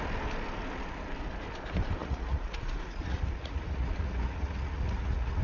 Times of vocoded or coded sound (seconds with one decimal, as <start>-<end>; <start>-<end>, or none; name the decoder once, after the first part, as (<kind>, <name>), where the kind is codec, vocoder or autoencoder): 2.0-5.4 (vocoder, Vocos)